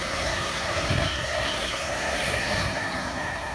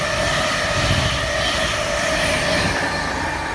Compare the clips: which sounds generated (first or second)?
first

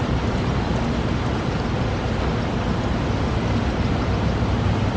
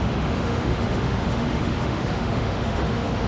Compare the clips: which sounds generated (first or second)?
second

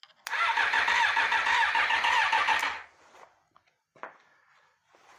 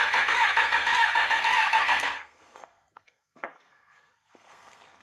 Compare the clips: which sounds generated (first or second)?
second